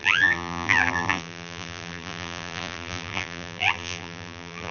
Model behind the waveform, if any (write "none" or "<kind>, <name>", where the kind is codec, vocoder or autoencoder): vocoder, BigVGAN v2